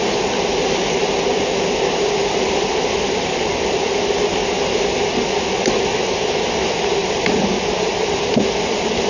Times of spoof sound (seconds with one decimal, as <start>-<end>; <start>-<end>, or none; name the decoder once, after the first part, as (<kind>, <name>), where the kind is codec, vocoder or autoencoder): none